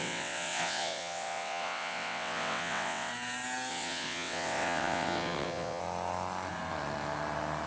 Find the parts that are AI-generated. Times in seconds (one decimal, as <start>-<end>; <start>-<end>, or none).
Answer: 0.0-3.1; 3.7-5.8